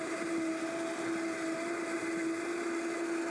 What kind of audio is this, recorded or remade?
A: recorded